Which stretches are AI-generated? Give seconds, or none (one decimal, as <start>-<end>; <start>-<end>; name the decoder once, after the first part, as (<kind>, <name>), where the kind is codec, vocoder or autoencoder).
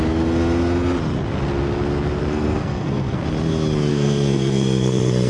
2.2-3.2 (codec, SNAC); 3.9-5.3